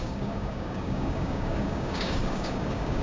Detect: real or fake fake